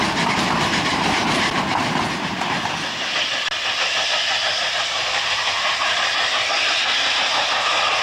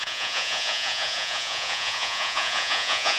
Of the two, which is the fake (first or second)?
second